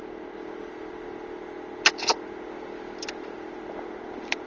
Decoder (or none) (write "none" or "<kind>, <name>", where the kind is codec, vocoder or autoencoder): none